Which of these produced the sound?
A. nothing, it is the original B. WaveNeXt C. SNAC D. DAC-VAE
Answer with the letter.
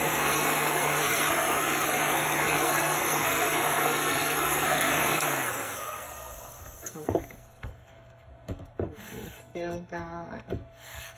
C